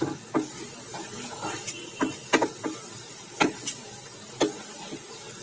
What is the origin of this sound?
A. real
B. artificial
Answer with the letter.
A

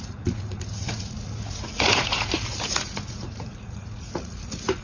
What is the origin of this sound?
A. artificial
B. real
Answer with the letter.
A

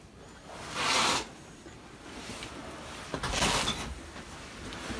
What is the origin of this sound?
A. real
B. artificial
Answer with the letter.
A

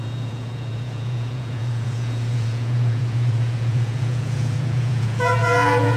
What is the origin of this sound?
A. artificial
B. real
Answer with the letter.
A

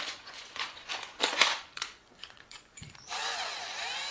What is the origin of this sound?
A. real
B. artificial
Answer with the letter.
B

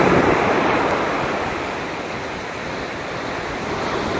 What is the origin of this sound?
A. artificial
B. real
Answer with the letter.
B